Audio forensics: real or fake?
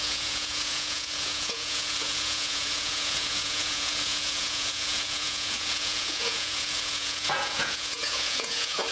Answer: fake